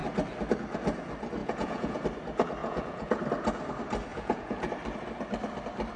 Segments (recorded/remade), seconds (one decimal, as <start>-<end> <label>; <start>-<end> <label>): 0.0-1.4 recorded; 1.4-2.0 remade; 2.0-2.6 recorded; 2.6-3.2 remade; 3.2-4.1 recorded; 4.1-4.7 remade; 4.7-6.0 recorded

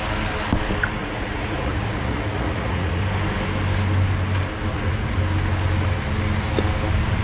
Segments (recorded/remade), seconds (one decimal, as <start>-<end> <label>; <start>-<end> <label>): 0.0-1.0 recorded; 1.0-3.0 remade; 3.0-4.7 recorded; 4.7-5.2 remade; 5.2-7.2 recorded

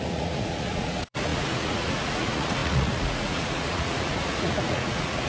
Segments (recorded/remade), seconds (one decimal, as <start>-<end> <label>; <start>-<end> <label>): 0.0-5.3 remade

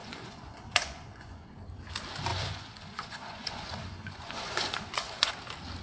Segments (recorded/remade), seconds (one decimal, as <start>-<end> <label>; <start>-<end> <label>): 0.0-1.5 remade; 1.5-2.3 recorded; 2.3-5.3 remade; 5.3-5.8 recorded

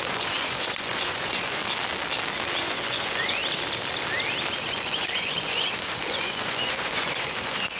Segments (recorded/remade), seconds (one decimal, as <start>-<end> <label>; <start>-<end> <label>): 0.0-1.6 remade; 1.6-2.6 recorded; 2.6-3.4 remade; 3.4-4.6 recorded; 4.6-7.8 remade